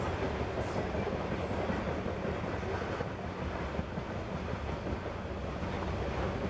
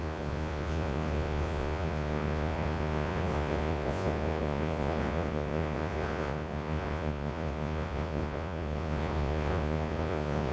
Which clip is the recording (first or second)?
first